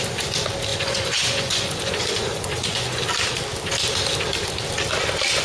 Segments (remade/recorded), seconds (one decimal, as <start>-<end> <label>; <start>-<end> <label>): 0.0-0.7 recorded; 0.7-3.0 remade; 3.0-5.4 recorded